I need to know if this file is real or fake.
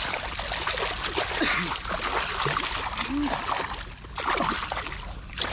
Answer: real